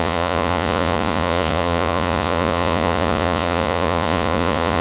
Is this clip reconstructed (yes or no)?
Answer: yes